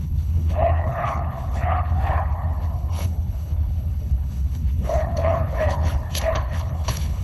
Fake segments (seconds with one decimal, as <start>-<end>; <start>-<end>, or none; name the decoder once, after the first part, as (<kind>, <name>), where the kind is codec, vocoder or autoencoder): 0.0-7.2 (codec, HILCodec)